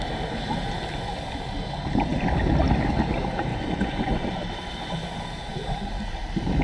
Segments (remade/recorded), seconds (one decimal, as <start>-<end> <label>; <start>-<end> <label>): 0.0-3.5 recorded; 3.5-4.3 remade; 4.3-6.6 recorded